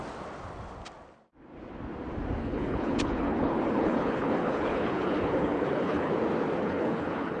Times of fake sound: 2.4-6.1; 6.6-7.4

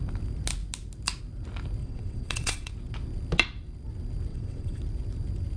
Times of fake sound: 1.8-2.7; 4.3-4.8

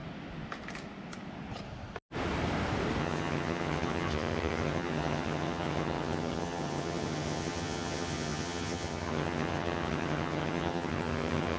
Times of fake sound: 3.0-11.6

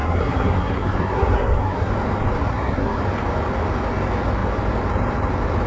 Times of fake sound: 0.0-1.9; 2.5-3.0

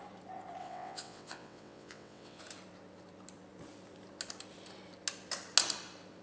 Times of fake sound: 0.6-2.4